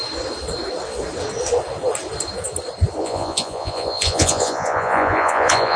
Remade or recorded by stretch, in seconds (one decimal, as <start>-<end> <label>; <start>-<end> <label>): 0.0-3.0 recorded; 3.0-5.8 remade